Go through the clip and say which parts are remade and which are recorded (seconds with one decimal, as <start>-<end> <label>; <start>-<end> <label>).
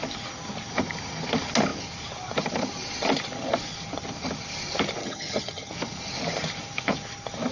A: 0.0-5.0 recorded; 5.0-5.7 remade; 5.7-7.5 recorded